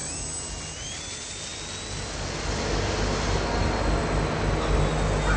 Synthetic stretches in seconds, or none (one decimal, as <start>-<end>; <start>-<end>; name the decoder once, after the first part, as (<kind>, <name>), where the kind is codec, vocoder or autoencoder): 0.0-1.0 (vocoder, BigVGAN v2)